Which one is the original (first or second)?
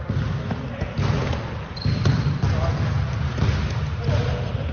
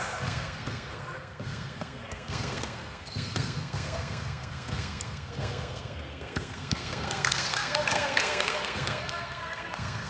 first